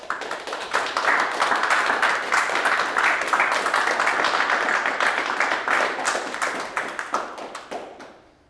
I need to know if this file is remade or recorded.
recorded